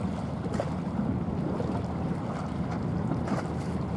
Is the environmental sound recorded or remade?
recorded